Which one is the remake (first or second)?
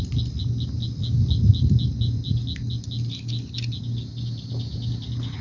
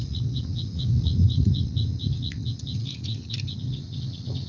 second